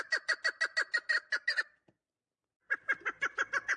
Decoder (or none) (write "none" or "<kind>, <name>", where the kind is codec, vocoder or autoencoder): none